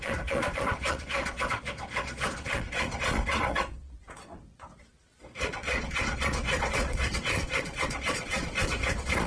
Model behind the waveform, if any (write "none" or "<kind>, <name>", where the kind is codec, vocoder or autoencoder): vocoder, Vocos